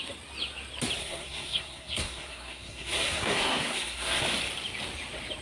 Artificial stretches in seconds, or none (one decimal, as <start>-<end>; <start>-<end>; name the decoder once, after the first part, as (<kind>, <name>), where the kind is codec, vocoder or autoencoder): 1.0-4.2 (codec, SNAC)